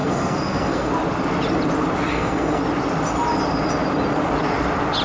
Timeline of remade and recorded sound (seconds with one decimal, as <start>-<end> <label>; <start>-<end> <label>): 0.0-0.9 remade; 0.9-2.1 recorded; 2.1-2.6 remade; 2.6-5.0 recorded